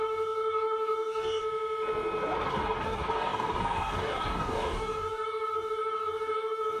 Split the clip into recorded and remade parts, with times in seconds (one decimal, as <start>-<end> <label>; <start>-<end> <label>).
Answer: 0.0-1.4 remade; 1.4-2.5 recorded; 2.5-6.8 remade

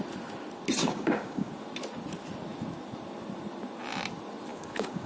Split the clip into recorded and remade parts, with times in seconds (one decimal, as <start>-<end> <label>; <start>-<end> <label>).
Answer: 0.0-0.8 recorded; 0.8-1.5 remade; 1.5-4.5 recorded; 4.5-5.1 remade

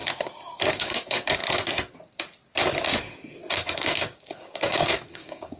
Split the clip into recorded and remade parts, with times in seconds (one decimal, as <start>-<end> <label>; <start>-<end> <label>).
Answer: 0.0-0.7 recorded; 0.7-1.4 remade; 1.4-3.5 recorded; 3.5-5.6 remade

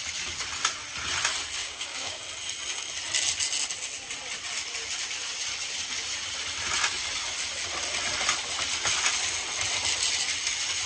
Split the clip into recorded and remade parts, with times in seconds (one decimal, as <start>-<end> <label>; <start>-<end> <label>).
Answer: 0.0-1.6 recorded; 1.6-2.2 remade; 2.2-10.9 recorded

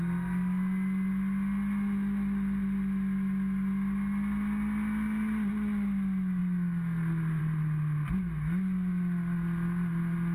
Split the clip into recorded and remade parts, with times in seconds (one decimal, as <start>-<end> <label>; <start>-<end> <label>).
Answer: 0.0-10.3 recorded